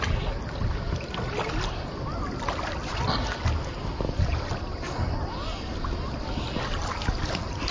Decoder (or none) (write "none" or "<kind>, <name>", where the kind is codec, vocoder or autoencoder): none